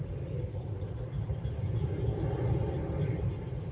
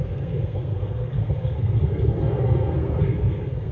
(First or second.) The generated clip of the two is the second